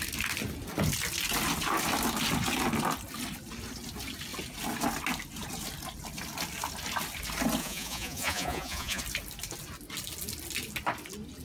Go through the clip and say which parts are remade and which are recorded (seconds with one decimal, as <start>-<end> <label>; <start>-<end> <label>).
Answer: 0.0-7.6 recorded; 7.6-9.0 remade; 9.0-11.4 recorded